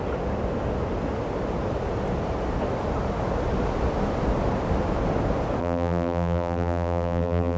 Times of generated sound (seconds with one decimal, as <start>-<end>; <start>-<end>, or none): 5.6-7.6